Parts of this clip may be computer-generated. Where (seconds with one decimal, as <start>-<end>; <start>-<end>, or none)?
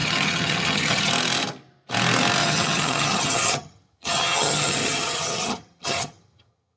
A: 0.0-1.1; 2.4-6.8